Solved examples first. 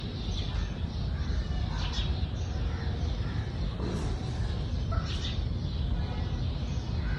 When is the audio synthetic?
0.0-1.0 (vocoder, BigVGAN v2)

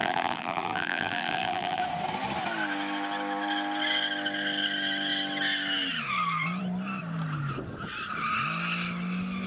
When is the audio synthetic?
0.0-1.8 (vocoder, BigVGAN v2)